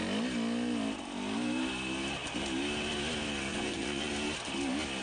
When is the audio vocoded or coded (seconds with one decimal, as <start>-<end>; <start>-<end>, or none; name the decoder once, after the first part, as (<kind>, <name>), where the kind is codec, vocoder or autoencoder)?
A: 3.5-4.1 (vocoder, Vocos)

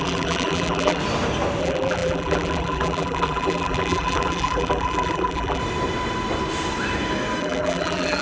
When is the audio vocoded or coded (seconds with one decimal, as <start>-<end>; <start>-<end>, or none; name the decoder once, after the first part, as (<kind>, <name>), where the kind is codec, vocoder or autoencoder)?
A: 0.0-1.0 (vocoder, BigVGAN v2); 1.6-5.6; 7.4-8.2

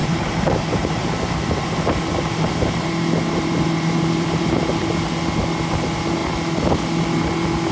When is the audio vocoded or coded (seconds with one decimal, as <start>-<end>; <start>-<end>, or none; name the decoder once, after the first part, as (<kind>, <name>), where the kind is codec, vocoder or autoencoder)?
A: 0.0-4.6 (vocoder, BigVGAN v2)